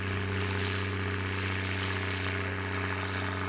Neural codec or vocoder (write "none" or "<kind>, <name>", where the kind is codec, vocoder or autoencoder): none